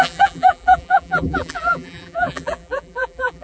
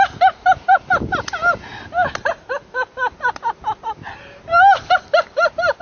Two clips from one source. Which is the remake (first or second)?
first